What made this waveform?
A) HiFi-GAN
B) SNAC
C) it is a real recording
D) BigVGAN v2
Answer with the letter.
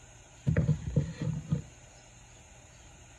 C